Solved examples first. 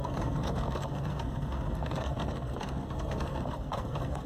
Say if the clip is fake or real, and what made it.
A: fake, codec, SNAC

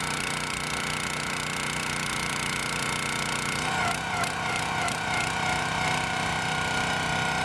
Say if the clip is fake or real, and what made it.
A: real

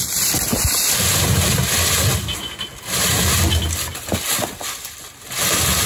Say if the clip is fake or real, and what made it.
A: real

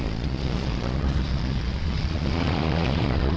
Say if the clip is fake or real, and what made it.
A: fake, vocoder, Vocos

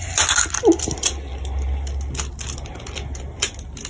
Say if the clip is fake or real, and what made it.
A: real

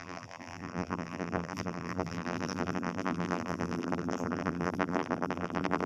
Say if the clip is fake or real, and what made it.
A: fake, vocoder, BigVGAN v2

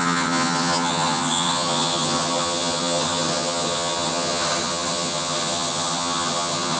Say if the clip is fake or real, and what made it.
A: fake, vocoder, HiFi-GAN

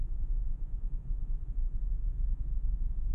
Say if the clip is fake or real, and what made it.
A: fake, vocoder, Vocos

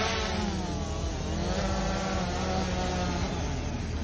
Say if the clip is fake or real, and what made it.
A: real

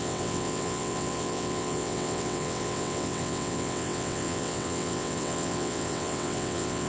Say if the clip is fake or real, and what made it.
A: fake, vocoder, WaveNeXt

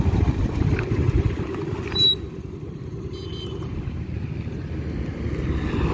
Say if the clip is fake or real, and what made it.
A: real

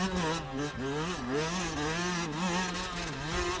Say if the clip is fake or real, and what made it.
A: real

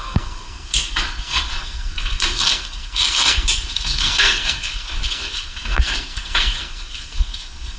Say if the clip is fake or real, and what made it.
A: fake, codec, SNAC